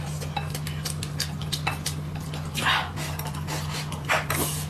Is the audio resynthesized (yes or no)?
no